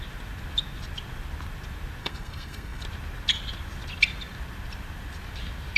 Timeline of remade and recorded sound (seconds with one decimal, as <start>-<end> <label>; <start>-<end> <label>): 0.0-2.0 recorded; 2.0-2.8 remade; 2.8-5.8 recorded

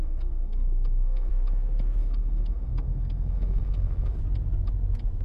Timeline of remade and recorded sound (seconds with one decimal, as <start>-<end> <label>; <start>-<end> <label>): 0.0-1.3 remade; 1.3-2.0 recorded; 2.0-4.2 remade; 4.2-5.2 recorded

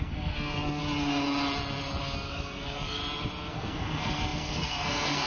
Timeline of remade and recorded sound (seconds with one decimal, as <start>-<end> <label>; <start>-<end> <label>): 0.0-0.8 remade; 0.8-2.0 recorded; 2.0-3.0 remade; 3.0-3.5 recorded; 3.5-5.3 remade

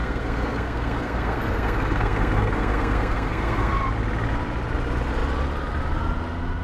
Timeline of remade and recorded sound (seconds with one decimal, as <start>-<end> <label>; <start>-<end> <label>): 0.0-3.7 remade; 3.7-6.6 recorded

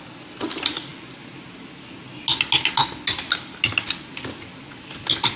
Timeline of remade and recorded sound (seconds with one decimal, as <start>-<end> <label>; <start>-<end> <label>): 0.0-5.4 recorded